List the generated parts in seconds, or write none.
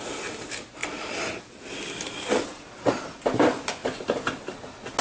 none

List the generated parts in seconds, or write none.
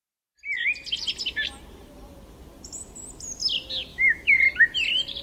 3.9-4.4 (autoencoder, DAC-VAE)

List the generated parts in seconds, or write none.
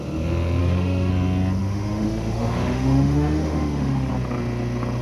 0.6-1.1 (autoencoder, DAC-VAE); 1.6-4.1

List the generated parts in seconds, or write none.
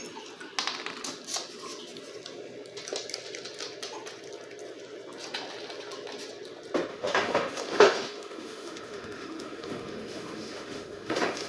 6.9-11.5 (autoencoder, DAC-VAE)